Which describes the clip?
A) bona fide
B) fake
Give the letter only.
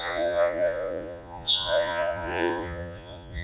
B